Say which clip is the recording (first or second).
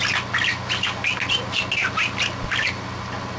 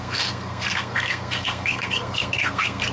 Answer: first